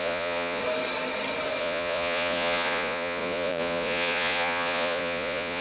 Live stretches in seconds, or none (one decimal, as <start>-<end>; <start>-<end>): 0.6-1.6